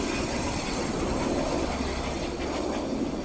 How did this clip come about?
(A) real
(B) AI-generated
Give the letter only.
A